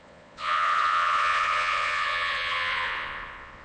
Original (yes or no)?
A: no